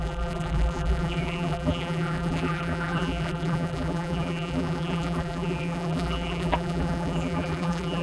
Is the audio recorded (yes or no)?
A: no